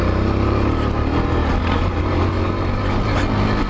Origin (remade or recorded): recorded